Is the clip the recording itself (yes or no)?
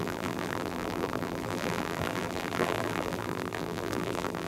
no